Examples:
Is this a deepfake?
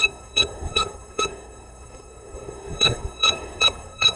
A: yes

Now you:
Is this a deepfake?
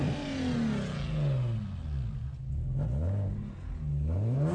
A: no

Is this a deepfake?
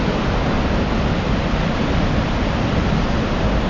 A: no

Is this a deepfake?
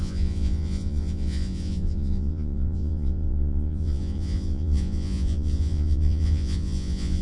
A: yes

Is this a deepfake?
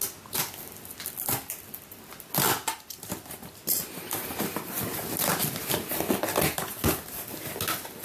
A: no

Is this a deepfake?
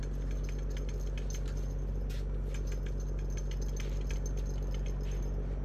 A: no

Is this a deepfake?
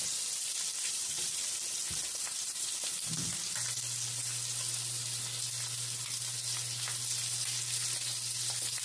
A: no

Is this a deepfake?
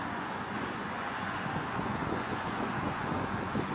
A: yes